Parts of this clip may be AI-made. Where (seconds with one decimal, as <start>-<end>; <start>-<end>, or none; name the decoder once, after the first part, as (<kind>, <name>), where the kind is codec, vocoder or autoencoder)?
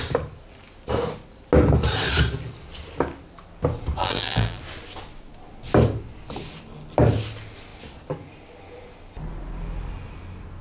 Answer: 4.0-4.6 (vocoder, BigVGAN v2)